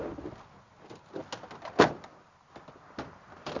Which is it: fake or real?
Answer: real